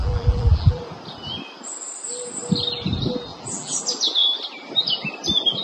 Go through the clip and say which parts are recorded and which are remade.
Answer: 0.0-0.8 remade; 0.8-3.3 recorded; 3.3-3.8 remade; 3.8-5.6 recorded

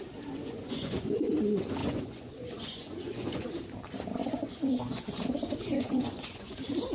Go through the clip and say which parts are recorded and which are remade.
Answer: 0.0-0.5 recorded; 0.5-1.3 remade; 1.3-1.8 recorded; 1.8-3.5 remade; 3.5-4.2 recorded; 4.2-6.5 remade; 6.5-6.9 recorded

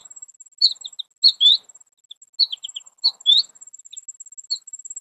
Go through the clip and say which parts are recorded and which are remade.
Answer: 0.0-5.0 recorded

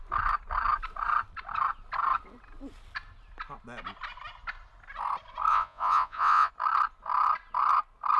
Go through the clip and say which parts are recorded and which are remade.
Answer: 0.0-5.5 recorded; 5.5-6.5 remade; 6.5-8.2 recorded

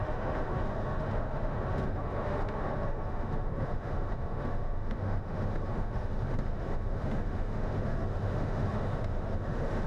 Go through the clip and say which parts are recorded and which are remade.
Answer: 0.0-9.9 remade

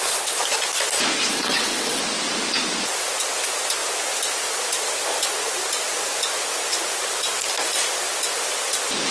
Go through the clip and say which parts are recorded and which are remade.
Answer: 0.0-1.3 recorded; 1.3-2.0 remade; 2.0-9.1 recorded